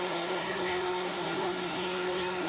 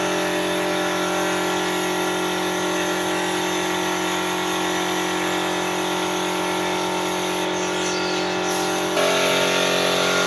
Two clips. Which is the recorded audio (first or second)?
second